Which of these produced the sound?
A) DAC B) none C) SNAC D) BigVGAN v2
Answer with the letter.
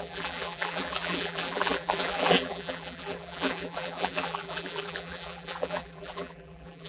D